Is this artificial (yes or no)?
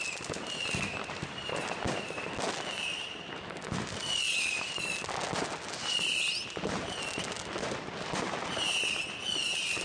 no